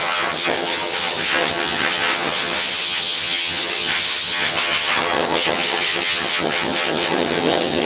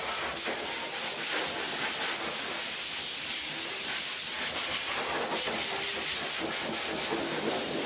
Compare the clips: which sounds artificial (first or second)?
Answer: first